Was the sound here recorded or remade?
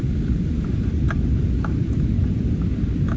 recorded